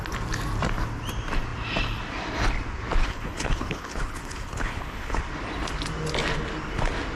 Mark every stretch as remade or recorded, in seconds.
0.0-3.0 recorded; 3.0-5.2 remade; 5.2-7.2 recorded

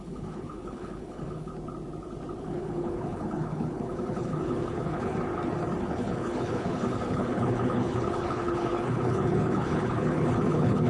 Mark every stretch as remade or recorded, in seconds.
0.0-1.5 remade; 1.5-2.4 recorded; 2.4-5.2 remade; 5.2-5.8 recorded; 5.8-10.9 remade

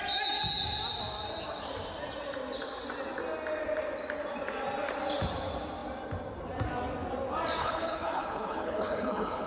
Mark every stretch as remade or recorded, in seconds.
0.0-7.6 recorded; 7.6-9.5 remade

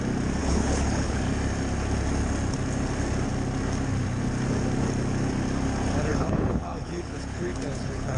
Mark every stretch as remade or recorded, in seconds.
0.0-0.4 recorded; 0.4-1.2 remade; 1.2-6.1 recorded; 6.1-8.2 remade

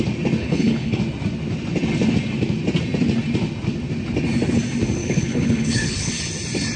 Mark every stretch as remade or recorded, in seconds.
0.0-0.4 recorded; 0.4-1.0 remade; 1.0-5.0 recorded; 5.0-6.1 remade; 6.1-6.8 recorded